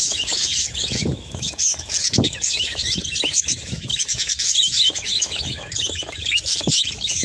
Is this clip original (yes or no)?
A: no